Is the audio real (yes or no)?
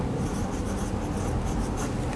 yes